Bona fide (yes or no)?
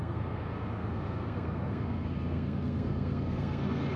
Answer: no